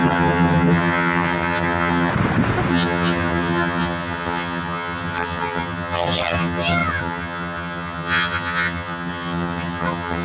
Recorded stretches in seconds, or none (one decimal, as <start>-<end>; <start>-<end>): 2.1-2.7